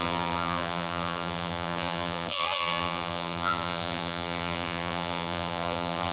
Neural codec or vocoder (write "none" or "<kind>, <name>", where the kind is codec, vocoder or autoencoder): vocoder, BigVGAN v2